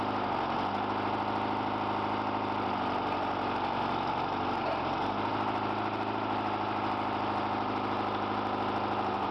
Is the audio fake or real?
real